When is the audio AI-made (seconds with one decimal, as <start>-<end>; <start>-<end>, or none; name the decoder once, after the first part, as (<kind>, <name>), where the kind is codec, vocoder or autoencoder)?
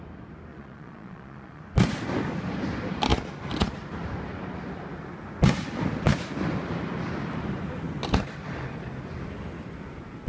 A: 0.5-1.6 (vocoder, Vocos)